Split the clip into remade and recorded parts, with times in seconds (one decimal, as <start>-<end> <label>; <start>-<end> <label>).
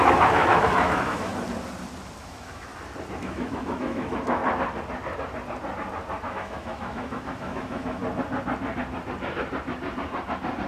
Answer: 0.0-1.3 remade; 1.3-2.2 recorded; 2.2-2.7 remade; 2.7-3.2 recorded; 3.2-4.4 remade; 4.4-6.3 recorded; 6.3-8.0 remade; 8.0-10.7 recorded